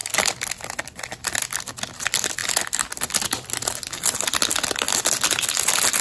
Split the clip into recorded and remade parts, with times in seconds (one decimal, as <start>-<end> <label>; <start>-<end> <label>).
0.0-6.0 recorded